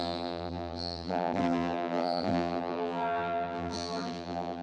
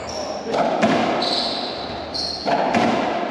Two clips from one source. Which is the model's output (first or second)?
first